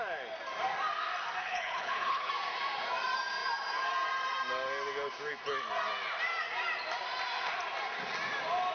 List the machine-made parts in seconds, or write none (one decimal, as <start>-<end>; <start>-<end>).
1.4-2.3